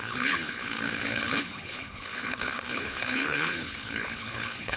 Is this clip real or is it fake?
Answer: fake